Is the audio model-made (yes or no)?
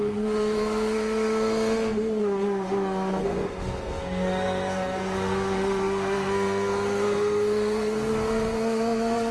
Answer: yes